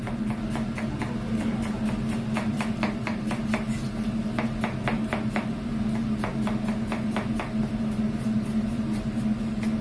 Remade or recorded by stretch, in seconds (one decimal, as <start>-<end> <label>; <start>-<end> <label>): 0.0-9.8 recorded